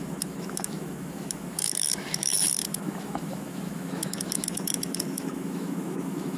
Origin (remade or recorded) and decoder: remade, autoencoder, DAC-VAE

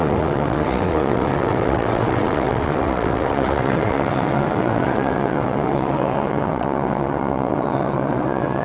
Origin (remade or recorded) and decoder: remade, vocoder, WaveNeXt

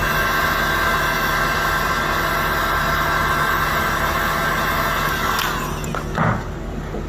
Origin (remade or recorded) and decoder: recorded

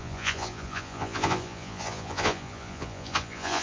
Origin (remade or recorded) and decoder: remade, vocoder, Vocos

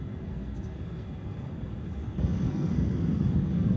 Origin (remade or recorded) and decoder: remade, codec, SNAC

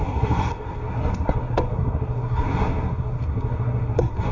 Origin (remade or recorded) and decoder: remade, codec, SNAC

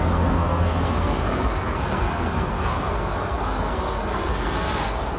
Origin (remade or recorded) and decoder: remade, codec, SNAC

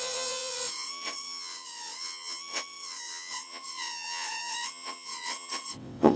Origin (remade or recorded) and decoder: remade, vocoder, WaveNeXt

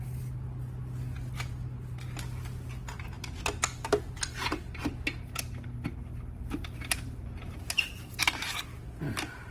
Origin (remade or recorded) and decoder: recorded